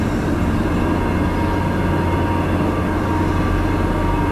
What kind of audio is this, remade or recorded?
recorded